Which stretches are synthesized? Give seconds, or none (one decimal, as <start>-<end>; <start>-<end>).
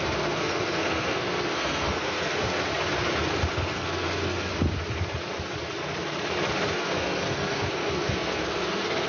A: 0.0-2.7; 3.5-4.5; 6.7-9.1